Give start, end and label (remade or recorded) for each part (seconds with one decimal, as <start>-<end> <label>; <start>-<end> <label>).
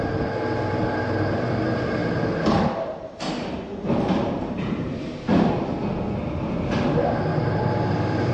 0.0-2.0 recorded; 2.0-5.7 remade; 5.7-7.3 recorded; 7.3-8.3 remade